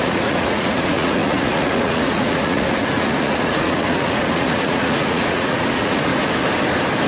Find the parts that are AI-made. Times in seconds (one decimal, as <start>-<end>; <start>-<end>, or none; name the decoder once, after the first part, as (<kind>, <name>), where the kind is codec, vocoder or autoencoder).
0.0-6.1 (vocoder, Vocos)